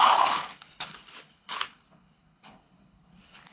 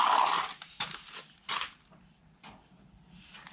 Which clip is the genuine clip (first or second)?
second